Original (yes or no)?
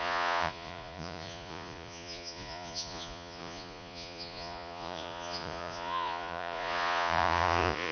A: no